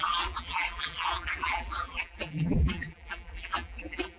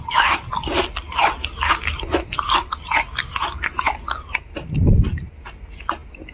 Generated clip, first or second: first